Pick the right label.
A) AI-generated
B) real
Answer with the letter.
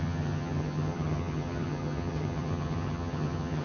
A